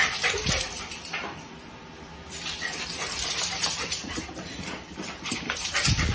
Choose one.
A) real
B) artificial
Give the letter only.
B